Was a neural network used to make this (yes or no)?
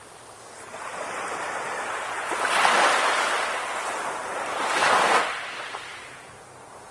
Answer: no